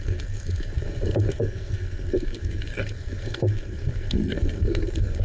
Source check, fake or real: fake